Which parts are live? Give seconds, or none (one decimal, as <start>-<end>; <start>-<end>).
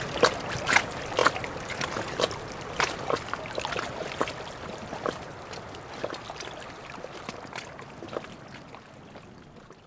0.0-9.9